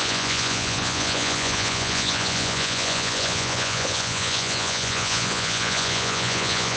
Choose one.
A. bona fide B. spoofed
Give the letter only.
B